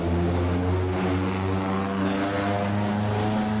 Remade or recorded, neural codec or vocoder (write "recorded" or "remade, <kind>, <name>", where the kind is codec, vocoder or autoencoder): recorded